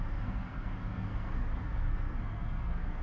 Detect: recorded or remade remade